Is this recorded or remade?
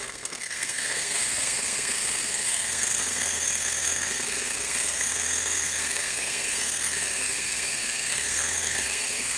remade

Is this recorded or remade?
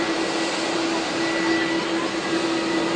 recorded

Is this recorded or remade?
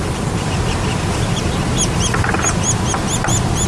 recorded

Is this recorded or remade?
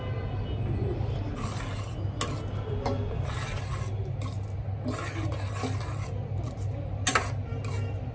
recorded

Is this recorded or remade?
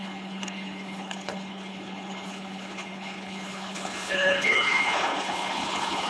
remade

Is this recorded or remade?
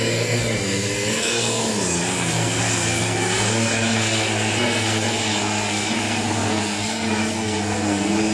remade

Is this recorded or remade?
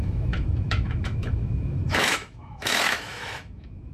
remade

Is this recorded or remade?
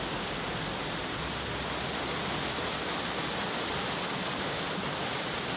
recorded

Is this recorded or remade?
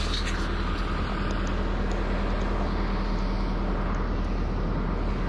recorded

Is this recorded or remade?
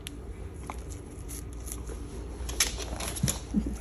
recorded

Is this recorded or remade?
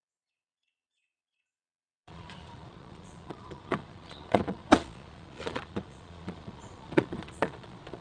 remade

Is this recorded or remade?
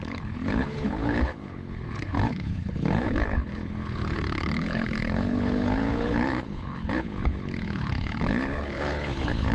remade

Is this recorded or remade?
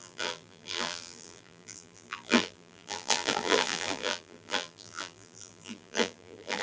remade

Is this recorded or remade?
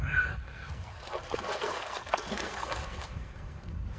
remade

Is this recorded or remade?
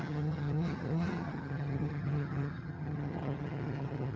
remade